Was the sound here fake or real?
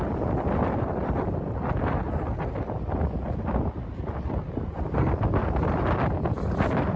real